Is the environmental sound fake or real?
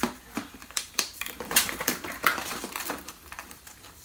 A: fake